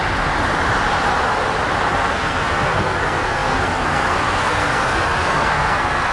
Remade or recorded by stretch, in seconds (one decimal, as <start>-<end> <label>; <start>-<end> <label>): 0.0-1.9 recorded; 1.9-6.1 remade